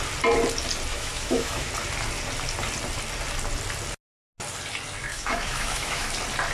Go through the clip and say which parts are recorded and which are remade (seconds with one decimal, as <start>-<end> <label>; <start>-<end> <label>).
0.0-0.9 recorded; 0.9-1.7 remade; 1.7-5.1 recorded; 5.1-6.1 remade; 6.1-6.5 recorded